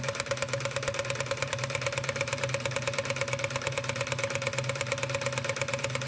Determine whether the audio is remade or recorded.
recorded